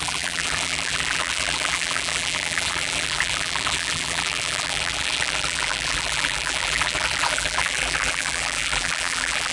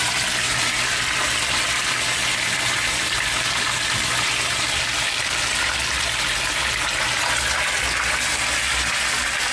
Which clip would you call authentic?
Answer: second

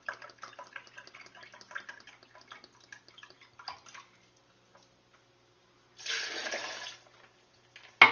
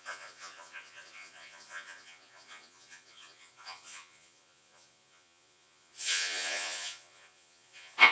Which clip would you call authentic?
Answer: first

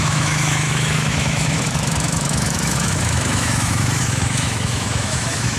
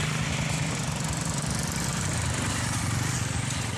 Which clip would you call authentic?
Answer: second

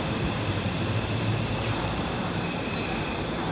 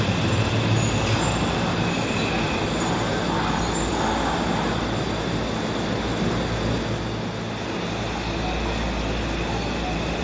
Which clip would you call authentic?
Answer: second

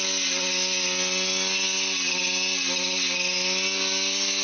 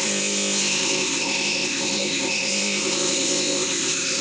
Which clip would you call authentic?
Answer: first